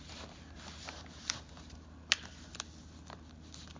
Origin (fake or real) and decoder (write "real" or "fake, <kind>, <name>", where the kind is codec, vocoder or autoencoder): real